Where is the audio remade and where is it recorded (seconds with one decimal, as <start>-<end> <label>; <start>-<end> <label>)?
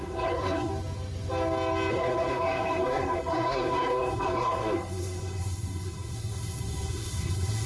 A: 0.0-0.7 remade; 0.7-1.9 recorded; 1.9-7.7 remade